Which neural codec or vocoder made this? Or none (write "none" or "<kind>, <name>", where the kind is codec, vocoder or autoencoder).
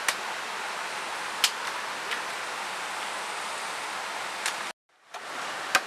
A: none